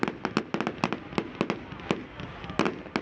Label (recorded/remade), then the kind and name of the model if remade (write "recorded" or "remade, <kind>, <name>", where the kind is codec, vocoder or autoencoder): recorded